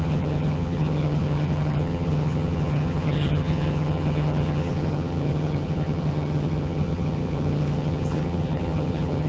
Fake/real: fake